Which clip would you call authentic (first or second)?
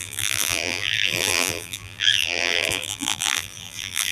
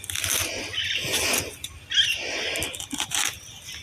second